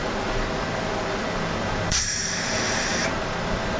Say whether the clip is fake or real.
fake